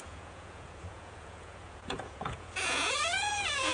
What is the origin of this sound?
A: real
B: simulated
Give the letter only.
B